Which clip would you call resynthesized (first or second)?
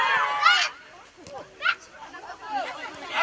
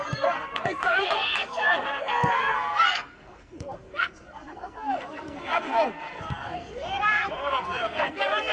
second